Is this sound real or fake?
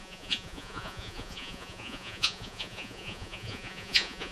fake